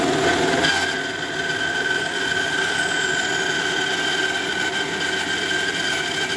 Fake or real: real